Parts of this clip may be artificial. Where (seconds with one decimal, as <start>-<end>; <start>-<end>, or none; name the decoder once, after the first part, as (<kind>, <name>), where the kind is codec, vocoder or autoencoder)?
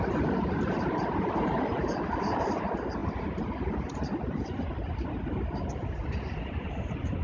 none